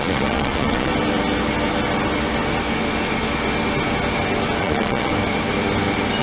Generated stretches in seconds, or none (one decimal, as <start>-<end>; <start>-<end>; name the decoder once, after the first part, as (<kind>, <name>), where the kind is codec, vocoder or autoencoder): 0.0-0.9 (vocoder, Vocos); 4.6-5.1